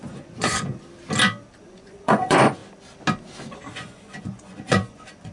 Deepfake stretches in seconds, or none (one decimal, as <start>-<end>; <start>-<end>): 0.0-0.8; 1.6-2.6; 3.7-5.3